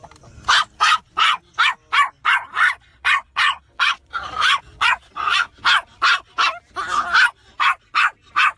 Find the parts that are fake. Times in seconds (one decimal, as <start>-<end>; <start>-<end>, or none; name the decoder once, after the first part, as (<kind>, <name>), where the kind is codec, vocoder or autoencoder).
2.9-5.5 (vocoder, Vocos)